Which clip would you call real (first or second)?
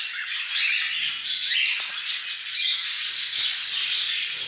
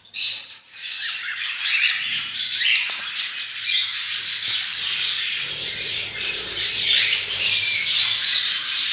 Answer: first